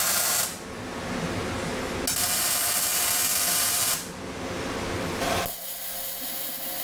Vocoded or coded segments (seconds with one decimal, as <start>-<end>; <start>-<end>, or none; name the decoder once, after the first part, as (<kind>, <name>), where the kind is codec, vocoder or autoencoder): none